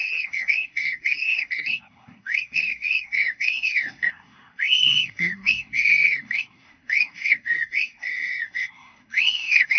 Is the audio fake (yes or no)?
yes